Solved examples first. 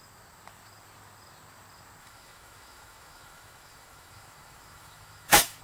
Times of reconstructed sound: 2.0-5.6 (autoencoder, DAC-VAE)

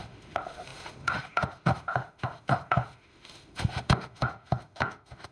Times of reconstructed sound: 0.0-5.3 (autoencoder, DAC-VAE)

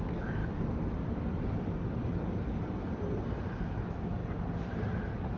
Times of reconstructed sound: 0.0-0.4 (autoencoder, DAC-VAE); 3.6-4.2

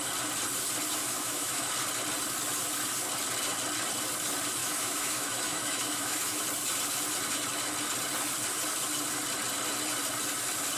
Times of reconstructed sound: 1.0-1.7 (autoencoder, DAC-VAE); 4.6-6.4

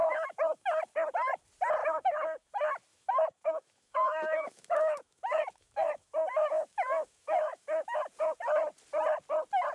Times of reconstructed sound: 0.0-0.8 (autoencoder, DAC-VAE); 1.8-2.5; 2.9-8.0

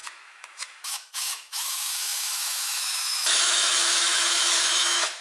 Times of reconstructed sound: 0.0-5.2 (autoencoder, DAC-VAE)